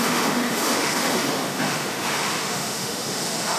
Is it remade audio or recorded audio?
remade